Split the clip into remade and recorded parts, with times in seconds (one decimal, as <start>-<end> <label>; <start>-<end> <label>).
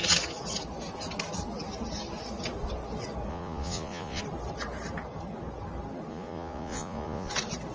0.0-3.3 recorded; 3.3-4.2 remade; 4.2-6.1 recorded; 6.1-7.3 remade; 7.3-7.7 recorded